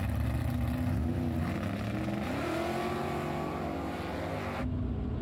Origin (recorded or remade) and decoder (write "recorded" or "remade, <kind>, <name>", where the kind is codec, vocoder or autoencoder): recorded